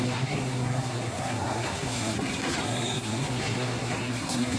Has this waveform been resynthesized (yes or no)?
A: yes